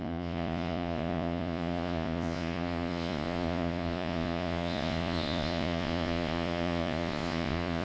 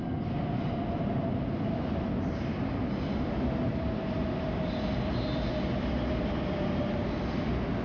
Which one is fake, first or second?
first